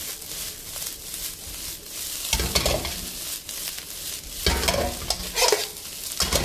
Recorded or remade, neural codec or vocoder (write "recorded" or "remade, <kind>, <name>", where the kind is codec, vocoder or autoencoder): recorded